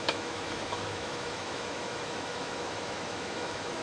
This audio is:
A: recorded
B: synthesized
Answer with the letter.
B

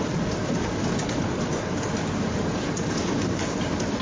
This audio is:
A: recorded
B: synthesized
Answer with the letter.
A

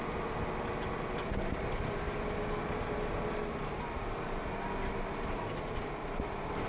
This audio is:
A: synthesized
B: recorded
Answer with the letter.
B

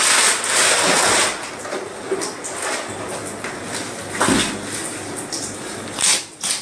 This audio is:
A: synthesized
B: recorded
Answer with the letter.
B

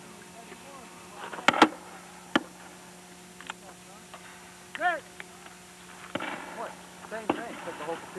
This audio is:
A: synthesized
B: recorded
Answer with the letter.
B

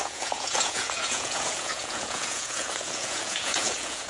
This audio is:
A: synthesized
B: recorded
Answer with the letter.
A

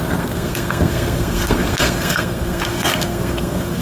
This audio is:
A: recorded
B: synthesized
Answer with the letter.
B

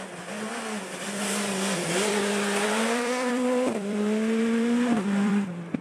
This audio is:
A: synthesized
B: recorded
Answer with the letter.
A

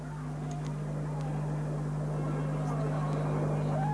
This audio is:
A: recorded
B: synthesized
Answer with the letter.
A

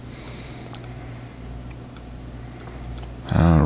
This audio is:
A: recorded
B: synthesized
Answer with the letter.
A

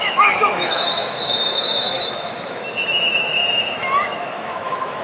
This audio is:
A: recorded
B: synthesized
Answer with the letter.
B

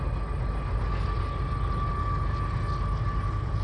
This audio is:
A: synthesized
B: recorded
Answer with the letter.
B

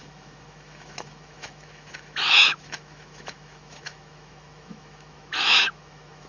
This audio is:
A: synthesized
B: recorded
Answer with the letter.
A